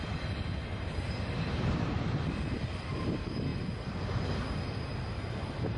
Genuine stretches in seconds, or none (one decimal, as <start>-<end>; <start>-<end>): 0.0-0.6; 2.1-5.8